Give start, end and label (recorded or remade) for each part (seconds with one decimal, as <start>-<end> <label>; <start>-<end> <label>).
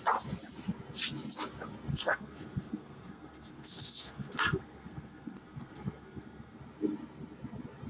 0.0-1.9 recorded; 1.9-6.6 remade; 6.6-7.9 recorded